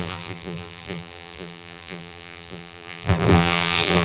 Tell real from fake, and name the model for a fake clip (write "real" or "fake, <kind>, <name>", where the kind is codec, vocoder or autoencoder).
fake, vocoder, BigVGAN v2